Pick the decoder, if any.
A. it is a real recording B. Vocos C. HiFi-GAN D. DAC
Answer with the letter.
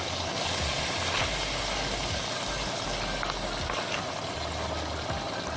A